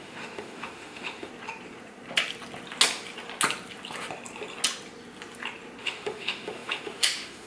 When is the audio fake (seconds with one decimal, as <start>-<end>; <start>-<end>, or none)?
0.0-1.3; 5.8-7.5